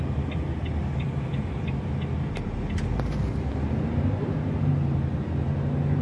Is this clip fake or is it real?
real